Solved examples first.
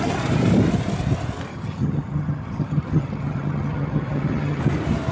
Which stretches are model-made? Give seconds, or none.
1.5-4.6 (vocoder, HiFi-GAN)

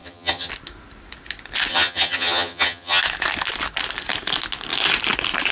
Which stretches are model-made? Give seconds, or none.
0.0-0.5 (vocoder, HiFi-GAN); 1.7-3.0

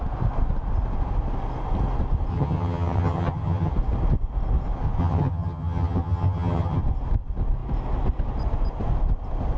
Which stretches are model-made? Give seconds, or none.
2.3-3.7 (vocoder, HiFi-GAN); 5.0-6.8

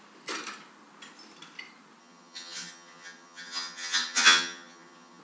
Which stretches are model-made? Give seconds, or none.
2.0-5.2 (vocoder, HiFi-GAN)

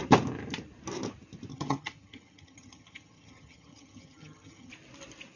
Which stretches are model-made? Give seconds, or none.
1.5-4.7 (vocoder, HiFi-GAN)

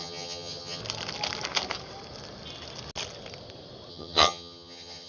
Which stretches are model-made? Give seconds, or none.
0.0-0.8 (vocoder, HiFi-GAN); 3.9-5.1